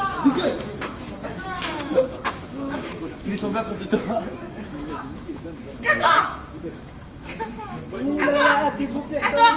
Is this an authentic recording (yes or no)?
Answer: no